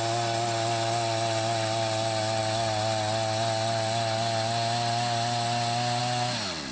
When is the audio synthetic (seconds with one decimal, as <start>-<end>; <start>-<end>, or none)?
none